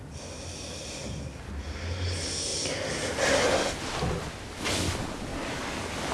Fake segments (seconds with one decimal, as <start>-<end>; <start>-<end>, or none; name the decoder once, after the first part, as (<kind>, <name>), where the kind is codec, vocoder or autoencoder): none